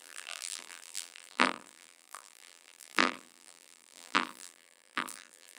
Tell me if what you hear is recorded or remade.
remade